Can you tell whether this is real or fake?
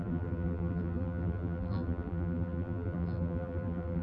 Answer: fake